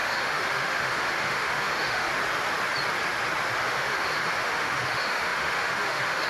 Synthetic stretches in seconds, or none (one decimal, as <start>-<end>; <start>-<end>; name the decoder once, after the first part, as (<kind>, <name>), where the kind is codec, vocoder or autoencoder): 0.0-2.1 (autoencoder, DAC-VAE); 3.6-6.3